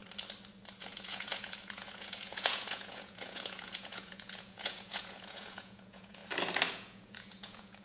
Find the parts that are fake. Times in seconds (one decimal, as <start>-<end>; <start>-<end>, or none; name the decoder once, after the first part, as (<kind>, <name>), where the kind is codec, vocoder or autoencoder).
0.8-6.2 (vocoder, Vocos); 6.7-7.8